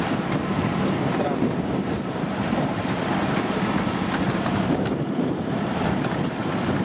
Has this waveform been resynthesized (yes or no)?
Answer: yes